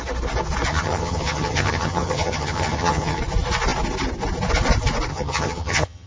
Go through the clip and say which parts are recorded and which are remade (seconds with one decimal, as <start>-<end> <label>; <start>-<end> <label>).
0.0-0.7 recorded; 0.7-3.2 remade; 3.2-5.1 recorded; 5.1-6.1 remade